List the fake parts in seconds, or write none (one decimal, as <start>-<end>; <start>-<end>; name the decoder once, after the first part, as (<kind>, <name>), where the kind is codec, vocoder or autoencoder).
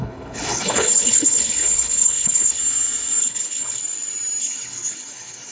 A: 0.0-2.6 (codec, HILCodec); 3.2-3.8; 4.4-5.5